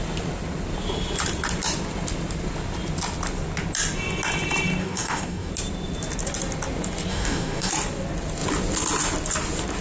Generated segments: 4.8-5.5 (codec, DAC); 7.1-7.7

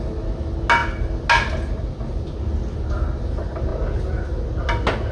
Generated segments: none

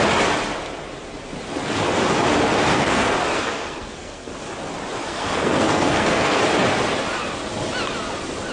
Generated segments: 2.7-4.3 (codec, SNAC); 5.0-6.4

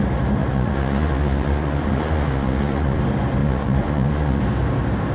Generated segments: 0.4-3.0 (vocoder, Vocos); 3.4-4.4

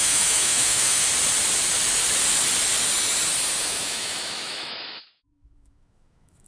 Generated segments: 0.0-1.1 (autoencoder, DAC-VAE); 3.6-6.5

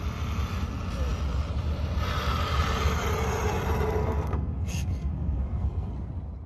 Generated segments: 4.0-5.9 (codec, SNAC)

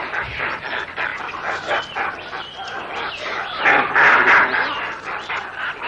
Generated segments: none